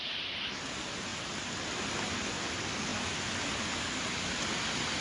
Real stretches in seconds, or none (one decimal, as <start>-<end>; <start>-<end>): 0.0-5.0